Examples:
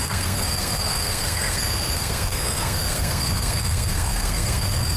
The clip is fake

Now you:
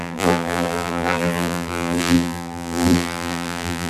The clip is fake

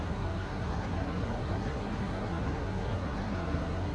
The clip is fake